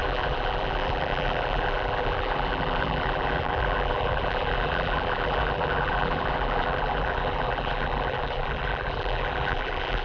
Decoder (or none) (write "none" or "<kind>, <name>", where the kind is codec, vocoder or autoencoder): vocoder, BigVGAN v2